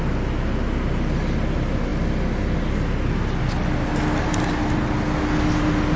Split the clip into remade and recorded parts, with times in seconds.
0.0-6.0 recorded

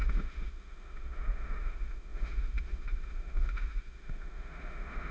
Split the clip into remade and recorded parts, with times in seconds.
0.0-5.1 remade

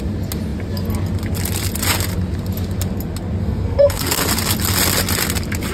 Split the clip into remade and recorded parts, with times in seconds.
0.0-3.4 recorded; 3.4-4.2 remade; 4.2-5.7 recorded

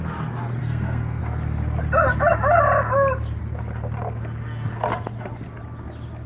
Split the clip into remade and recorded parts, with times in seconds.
0.0-0.6 recorded; 0.6-1.2 remade; 1.2-6.3 recorded

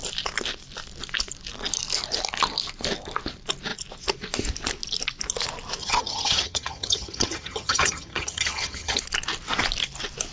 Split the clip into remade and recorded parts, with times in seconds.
0.0-5.8 recorded; 5.8-9.0 remade; 9.0-10.3 recorded

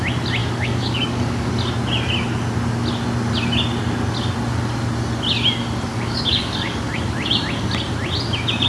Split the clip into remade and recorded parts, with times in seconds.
0.0-0.4 recorded; 0.4-1.5 remade; 1.5-5.9 recorded; 5.9-7.0 remade; 7.0-8.7 recorded

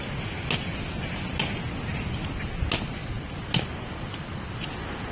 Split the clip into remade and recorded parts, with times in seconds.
0.0-5.1 recorded

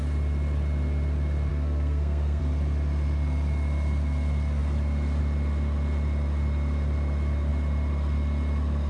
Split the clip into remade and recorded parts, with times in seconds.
0.0-1.5 recorded; 1.5-2.4 remade; 2.4-8.9 recorded